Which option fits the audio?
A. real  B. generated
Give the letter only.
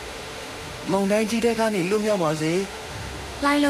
B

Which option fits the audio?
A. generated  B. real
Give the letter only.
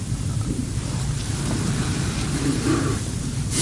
A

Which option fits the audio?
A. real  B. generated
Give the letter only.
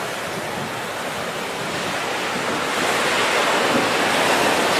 A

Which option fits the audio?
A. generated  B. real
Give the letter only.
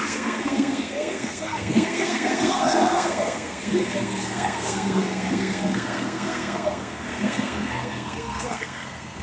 A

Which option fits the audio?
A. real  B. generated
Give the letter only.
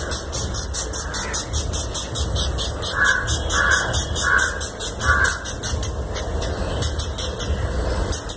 A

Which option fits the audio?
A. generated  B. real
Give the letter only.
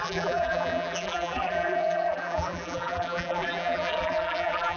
A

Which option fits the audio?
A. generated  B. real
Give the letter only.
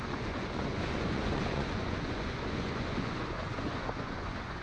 A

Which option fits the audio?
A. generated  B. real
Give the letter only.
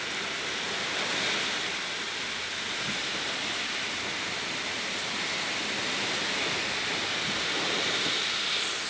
B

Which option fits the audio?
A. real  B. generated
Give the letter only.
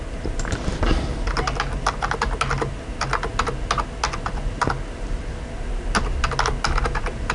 A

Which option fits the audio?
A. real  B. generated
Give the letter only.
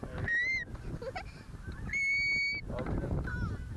A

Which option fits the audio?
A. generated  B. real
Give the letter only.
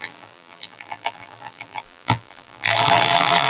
A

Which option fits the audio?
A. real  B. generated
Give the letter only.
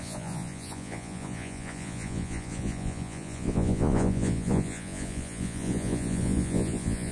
B